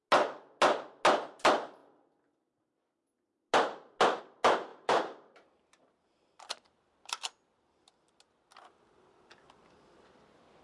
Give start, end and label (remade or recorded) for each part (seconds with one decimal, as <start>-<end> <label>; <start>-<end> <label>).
0.0-4.7 recorded; 4.7-5.5 remade; 5.5-10.6 recorded